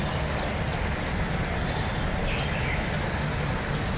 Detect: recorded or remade recorded